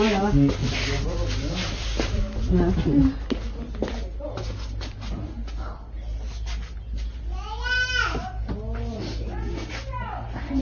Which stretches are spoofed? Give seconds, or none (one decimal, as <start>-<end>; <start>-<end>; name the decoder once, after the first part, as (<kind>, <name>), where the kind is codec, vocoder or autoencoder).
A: 0.6-2.2 (vocoder, BigVGAN v2)